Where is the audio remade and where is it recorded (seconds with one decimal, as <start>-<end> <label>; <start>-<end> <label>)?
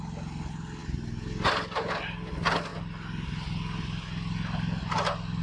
0.0-5.4 recorded